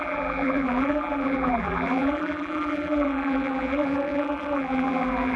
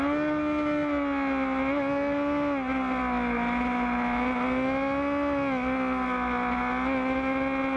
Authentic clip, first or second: second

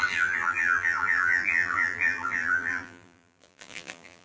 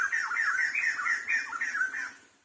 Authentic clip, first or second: second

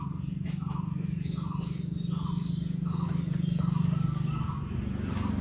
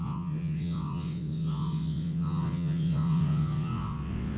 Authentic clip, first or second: first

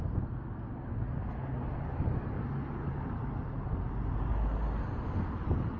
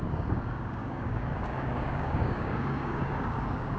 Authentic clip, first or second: first